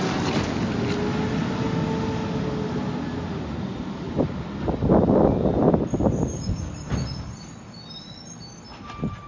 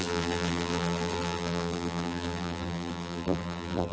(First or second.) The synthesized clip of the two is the second